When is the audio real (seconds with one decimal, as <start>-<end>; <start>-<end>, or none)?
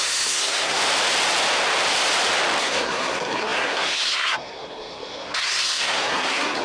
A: 0.8-2.6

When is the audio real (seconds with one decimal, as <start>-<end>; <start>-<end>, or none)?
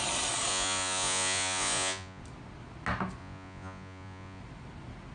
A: 0.0-0.5; 2.2-3.2; 4.4-5.1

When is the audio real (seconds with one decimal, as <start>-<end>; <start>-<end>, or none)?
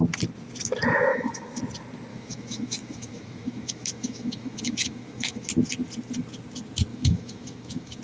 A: 0.0-1.1; 1.6-2.1; 5.5-6.9